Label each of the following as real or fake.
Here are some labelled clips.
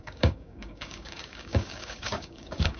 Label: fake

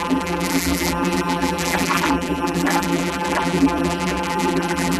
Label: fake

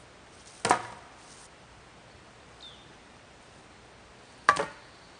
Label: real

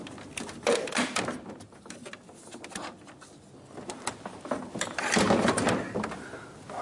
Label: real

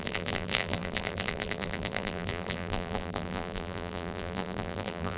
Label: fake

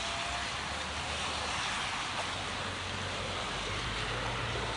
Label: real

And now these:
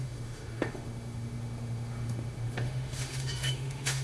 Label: fake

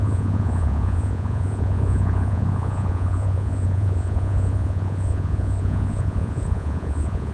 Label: fake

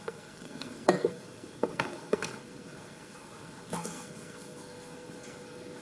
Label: fake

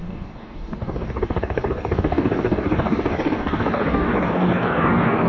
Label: fake